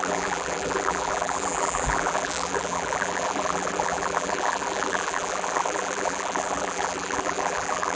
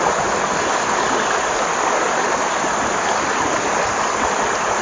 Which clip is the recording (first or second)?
second